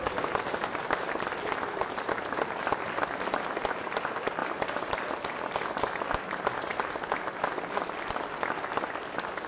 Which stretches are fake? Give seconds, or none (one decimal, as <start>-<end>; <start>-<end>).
none